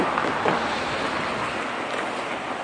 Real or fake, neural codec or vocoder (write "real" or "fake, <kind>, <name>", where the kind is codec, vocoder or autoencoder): real